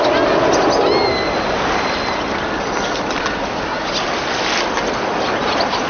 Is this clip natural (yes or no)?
yes